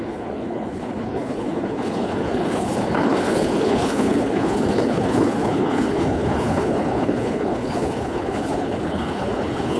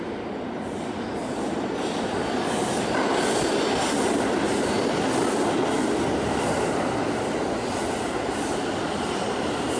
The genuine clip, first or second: second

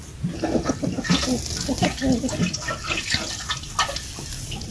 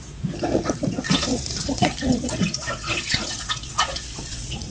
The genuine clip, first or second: first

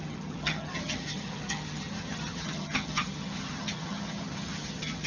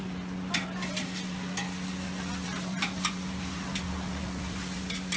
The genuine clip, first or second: second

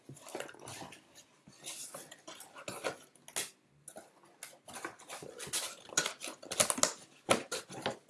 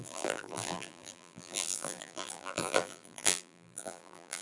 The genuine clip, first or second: first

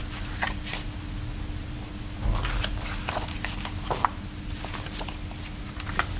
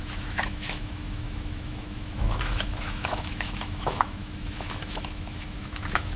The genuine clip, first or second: first